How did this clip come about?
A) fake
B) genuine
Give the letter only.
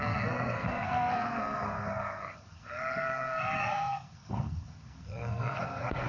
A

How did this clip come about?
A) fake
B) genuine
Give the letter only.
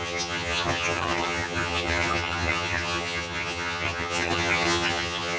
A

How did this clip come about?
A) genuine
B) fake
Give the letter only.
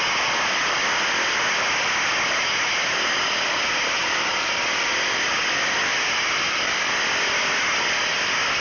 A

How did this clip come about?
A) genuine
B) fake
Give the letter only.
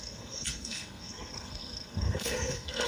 B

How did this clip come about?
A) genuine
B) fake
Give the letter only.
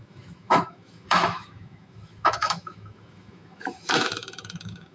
B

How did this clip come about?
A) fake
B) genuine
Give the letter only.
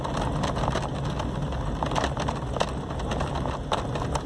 B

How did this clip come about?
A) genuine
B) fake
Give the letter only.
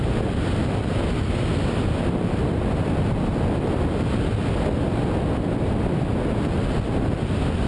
A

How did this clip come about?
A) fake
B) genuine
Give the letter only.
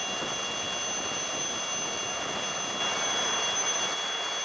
B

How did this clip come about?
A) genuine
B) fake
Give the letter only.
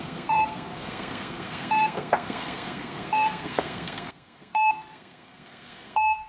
B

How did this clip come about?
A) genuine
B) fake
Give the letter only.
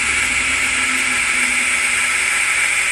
A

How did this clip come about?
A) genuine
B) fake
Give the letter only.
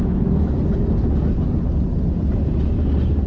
A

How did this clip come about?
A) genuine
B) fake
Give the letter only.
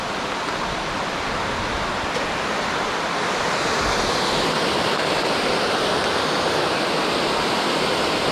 A